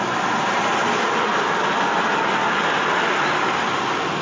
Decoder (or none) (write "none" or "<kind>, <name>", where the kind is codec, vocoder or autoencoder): none